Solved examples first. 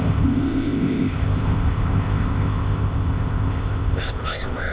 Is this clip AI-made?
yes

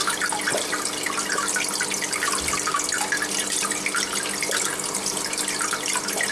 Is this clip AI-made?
no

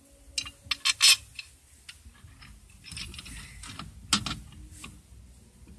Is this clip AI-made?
no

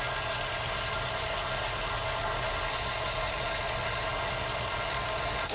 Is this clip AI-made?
no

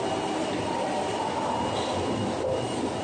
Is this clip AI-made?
no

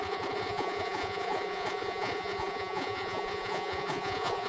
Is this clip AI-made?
yes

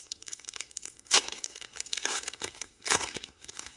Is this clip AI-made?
yes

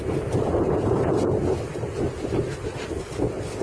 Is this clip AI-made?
no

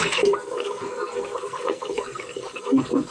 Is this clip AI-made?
yes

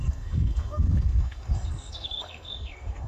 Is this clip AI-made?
yes